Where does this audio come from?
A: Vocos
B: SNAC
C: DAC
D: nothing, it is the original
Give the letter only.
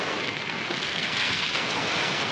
B